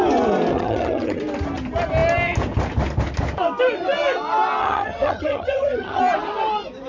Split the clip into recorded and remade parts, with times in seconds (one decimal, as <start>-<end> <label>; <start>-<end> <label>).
0.0-0.5 recorded; 0.5-1.2 remade; 1.2-4.6 recorded; 4.6-6.0 remade; 6.0-6.9 recorded